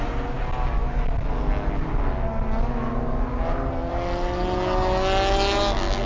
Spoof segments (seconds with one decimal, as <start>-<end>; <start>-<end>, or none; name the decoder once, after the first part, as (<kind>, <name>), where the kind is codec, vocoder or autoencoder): none